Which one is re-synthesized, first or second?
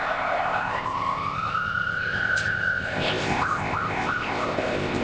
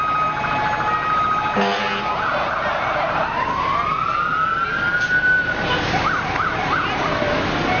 first